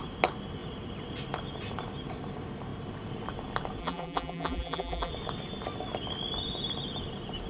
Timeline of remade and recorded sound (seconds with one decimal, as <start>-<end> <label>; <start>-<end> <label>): 0.0-3.8 recorded; 3.8-5.1 remade; 5.1-7.5 recorded